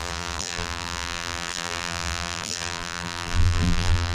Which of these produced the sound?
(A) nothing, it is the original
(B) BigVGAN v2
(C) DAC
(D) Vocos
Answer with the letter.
B